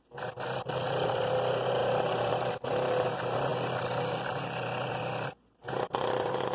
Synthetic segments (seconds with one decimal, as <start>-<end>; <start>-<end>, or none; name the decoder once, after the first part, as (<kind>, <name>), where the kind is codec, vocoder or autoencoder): 1.8-2.3 (vocoder, BigVGAN v2)